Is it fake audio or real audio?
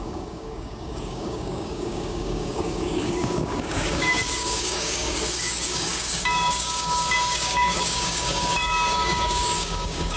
fake